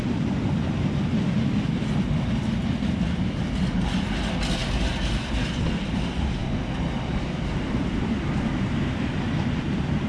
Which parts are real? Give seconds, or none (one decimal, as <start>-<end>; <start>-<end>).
0.0-10.1